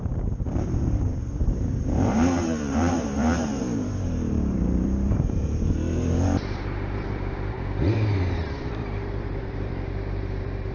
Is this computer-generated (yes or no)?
yes